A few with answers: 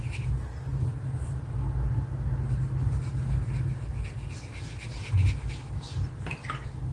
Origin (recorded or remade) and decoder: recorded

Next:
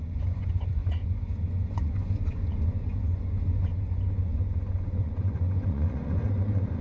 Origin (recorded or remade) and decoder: remade, vocoder, Vocos